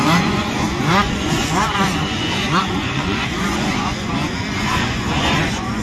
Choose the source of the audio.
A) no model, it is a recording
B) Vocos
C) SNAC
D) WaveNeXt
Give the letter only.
B